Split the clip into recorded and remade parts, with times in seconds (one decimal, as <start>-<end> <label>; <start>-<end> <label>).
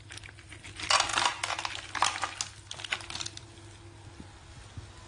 0.0-5.1 recorded